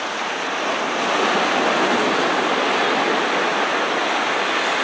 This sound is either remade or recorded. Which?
recorded